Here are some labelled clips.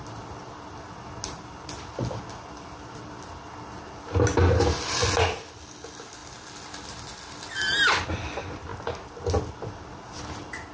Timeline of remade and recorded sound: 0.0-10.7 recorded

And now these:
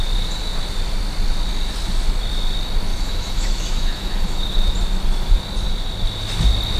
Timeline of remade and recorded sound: 0.0-2.9 recorded; 2.9-4.7 remade; 4.7-6.8 recorded

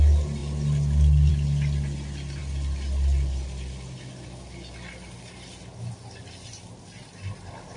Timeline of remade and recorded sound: 0.0-7.8 recorded